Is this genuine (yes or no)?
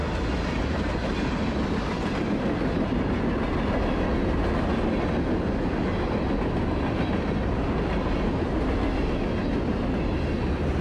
yes